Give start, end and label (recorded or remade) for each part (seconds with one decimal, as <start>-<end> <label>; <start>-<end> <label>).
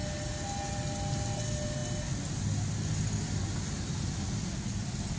0.0-5.2 recorded